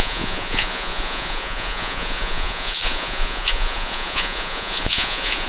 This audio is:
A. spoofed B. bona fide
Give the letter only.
A